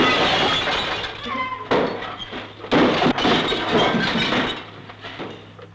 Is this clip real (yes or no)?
yes